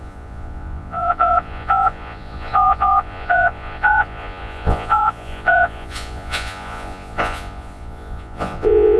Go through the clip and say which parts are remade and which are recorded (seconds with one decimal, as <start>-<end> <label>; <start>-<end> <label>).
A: 0.0-9.0 remade